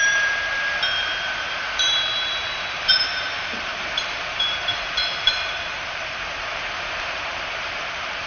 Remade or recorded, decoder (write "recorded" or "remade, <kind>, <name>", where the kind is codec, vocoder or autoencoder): remade, vocoder, BigVGAN v2